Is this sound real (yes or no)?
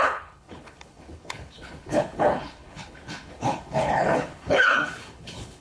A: no